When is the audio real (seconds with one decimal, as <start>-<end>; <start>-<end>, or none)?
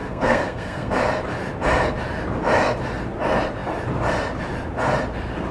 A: 0.9-5.5